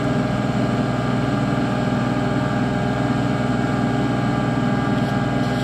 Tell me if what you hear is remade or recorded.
recorded